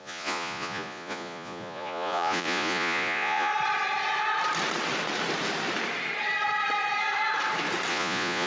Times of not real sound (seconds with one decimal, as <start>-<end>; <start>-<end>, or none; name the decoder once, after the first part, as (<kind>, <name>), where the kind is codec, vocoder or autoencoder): 0.0-3.5 (vocoder, Vocos); 7.9-8.5